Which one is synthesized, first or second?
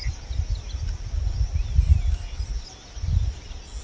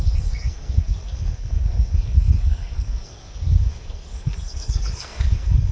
second